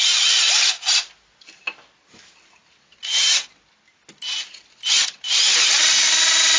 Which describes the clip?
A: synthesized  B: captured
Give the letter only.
B